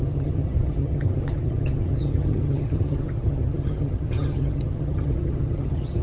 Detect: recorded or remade remade